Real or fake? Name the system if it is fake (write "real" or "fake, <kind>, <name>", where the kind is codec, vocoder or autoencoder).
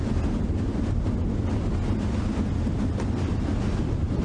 real